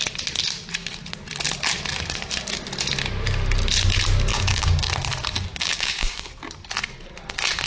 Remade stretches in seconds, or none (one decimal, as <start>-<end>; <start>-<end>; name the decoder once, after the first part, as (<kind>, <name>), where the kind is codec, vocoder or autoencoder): 4.3-4.9 (codec, DAC); 5.5-6.3